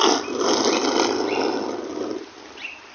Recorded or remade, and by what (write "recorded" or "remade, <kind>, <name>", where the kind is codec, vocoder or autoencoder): recorded